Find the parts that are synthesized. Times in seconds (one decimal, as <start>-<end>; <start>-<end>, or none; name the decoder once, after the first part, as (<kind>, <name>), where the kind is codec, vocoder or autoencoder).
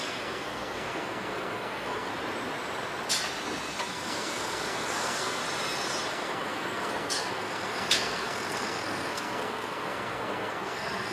0.0-2.1 (codec, SNAC); 3.9-5.4; 6.1-11.1